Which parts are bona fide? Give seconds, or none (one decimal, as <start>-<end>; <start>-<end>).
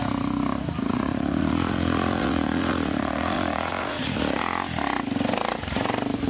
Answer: 0.0-0.9; 4.4-6.3